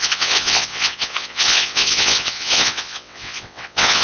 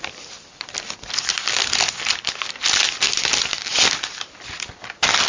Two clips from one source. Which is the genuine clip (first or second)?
second